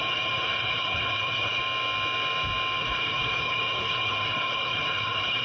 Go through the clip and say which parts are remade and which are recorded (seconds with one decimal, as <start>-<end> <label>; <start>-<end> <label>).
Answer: 0.0-1.6 remade; 1.6-2.8 recorded; 2.8-5.4 remade